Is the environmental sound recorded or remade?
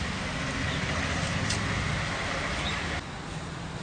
recorded